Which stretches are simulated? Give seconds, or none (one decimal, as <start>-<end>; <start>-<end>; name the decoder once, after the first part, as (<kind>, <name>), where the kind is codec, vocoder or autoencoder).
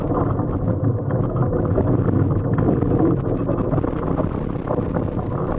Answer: 1.4-4.8 (vocoder, BigVGAN v2)